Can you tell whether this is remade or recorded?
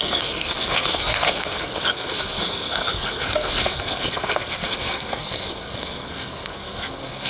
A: remade